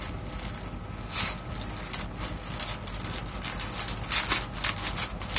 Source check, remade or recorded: recorded